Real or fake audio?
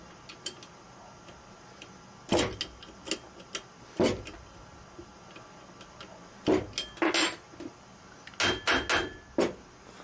real